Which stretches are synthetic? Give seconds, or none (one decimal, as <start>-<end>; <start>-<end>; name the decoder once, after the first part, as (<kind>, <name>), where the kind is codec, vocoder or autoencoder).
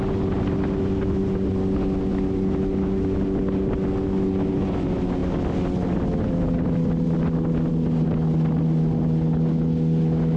none